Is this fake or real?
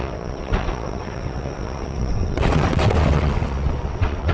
fake